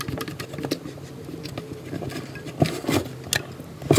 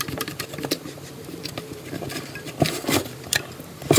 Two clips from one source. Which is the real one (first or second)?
first